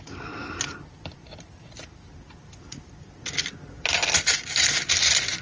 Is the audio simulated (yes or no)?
no